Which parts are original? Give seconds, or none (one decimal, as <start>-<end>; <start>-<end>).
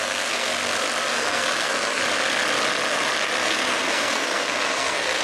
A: 0.5-1.1; 2.0-3.4